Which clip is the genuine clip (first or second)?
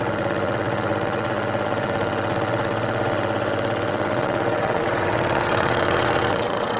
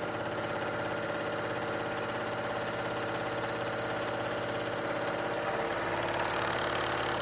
second